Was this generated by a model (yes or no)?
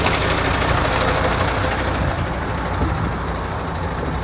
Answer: no